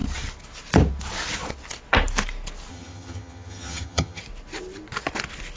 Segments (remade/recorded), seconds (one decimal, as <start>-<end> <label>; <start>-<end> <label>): 0.0-2.7 recorded; 2.7-4.2 remade; 4.2-5.6 recorded

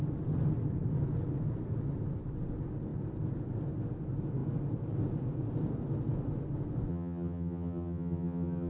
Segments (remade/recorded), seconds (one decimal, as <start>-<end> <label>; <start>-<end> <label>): 0.0-6.9 recorded; 6.9-8.7 remade

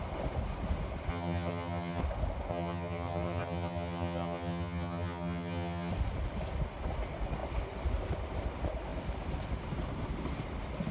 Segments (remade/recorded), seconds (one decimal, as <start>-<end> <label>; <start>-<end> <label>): 0.0-1.1 recorded; 1.1-2.0 remade; 2.0-2.5 recorded; 2.5-5.9 remade; 5.9-10.9 recorded

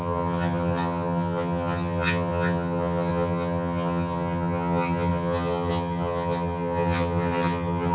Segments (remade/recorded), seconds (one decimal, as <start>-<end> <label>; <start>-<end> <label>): 0.0-7.9 remade

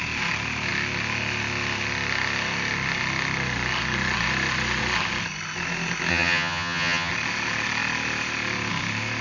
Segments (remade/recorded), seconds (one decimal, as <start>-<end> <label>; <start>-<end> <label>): 0.0-6.1 recorded; 6.1-7.1 remade; 7.1-9.2 recorded

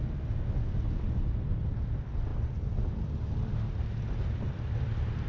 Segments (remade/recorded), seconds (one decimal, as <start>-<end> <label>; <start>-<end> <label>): 0.0-5.3 recorded

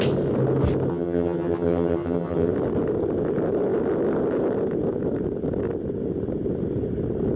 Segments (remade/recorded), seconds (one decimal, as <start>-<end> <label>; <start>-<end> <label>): 0.0-0.9 recorded; 0.9-2.5 remade; 2.5-7.4 recorded